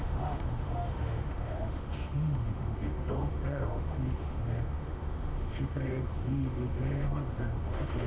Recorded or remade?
remade